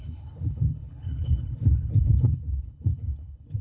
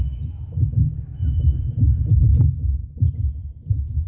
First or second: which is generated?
first